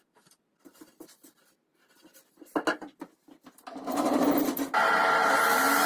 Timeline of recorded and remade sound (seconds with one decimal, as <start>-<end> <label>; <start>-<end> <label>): 0.0-5.9 recorded